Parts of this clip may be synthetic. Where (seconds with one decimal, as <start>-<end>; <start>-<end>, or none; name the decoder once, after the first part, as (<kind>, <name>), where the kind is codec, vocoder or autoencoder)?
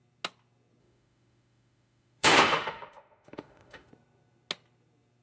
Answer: 0.8-3.9 (autoencoder, DAC-VAE)